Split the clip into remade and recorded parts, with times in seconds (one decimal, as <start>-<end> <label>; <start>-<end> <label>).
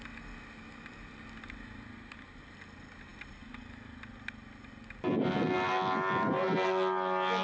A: 0.0-7.4 recorded